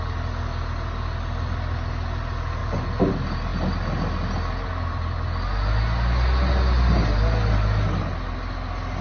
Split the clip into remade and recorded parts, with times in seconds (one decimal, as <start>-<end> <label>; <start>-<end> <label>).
0.0-9.0 recorded